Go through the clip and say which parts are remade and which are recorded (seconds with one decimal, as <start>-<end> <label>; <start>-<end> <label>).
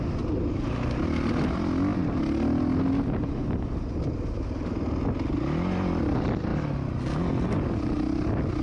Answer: 0.0-8.6 recorded